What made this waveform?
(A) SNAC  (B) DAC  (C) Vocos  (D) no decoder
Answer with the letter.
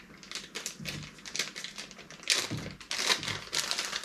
D